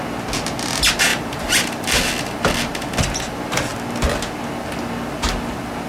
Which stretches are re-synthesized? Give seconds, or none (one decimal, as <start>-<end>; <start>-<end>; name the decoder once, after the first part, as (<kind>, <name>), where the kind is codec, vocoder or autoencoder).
none